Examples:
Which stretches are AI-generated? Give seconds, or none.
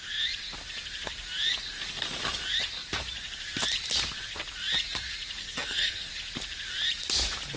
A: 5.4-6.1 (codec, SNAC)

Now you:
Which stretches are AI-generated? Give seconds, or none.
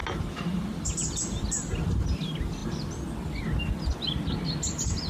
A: none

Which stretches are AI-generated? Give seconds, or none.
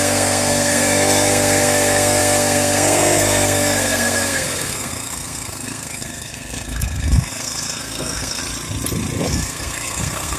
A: 0.0-8.4 (codec, SNAC); 9.3-10.4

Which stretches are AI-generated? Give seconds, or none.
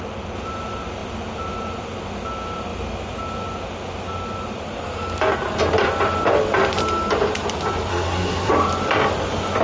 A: 7.9-8.5 (codec, SNAC)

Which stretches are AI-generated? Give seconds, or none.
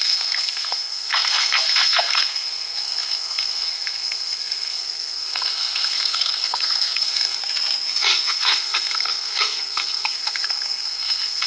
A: 0.0-7.4 (codec, SNAC); 8.3-11.5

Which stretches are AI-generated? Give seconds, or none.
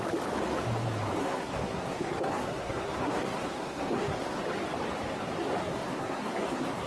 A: 1.2-4.4 (codec, SNAC); 5.6-6.9